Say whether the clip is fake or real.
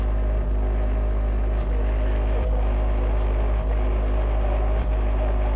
real